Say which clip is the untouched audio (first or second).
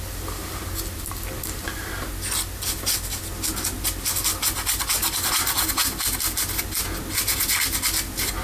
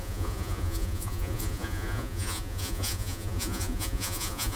first